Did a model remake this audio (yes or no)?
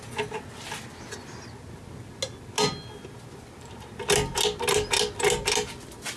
no